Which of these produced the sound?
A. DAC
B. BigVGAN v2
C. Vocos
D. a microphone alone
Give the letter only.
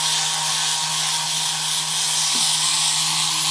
D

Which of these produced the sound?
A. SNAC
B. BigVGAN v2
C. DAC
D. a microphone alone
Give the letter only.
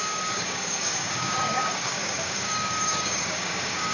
C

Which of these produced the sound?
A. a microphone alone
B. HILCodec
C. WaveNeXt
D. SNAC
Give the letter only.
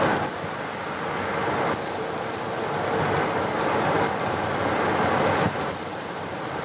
A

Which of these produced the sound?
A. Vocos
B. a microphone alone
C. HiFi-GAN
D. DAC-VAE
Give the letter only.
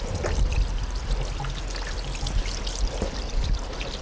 B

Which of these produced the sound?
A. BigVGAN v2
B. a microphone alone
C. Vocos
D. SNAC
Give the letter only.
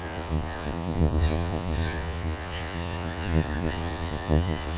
C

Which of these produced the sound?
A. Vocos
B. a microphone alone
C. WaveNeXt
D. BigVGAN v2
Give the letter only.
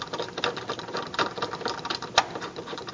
B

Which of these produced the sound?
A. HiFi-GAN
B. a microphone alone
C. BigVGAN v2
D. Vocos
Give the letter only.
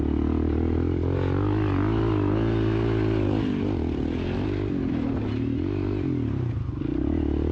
B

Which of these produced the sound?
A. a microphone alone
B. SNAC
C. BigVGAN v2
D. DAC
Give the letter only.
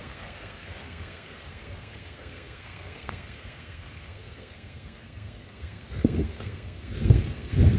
B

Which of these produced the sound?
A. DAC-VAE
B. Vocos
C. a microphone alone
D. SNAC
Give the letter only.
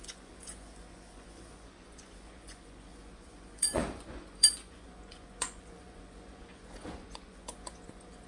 B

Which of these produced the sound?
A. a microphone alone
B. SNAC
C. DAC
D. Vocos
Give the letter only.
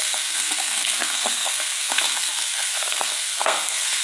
B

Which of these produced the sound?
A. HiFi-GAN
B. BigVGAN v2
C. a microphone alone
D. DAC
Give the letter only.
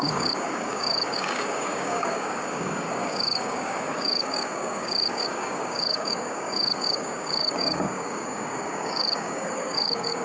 D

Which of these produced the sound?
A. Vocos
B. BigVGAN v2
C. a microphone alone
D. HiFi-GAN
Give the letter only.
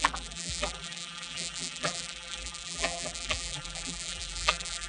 B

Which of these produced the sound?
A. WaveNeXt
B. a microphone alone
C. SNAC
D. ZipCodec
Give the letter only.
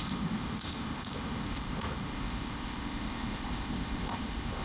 D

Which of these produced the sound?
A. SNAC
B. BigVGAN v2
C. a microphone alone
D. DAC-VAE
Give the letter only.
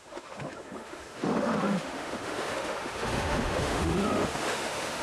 D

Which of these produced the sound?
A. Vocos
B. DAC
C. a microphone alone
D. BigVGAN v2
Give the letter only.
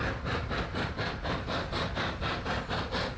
C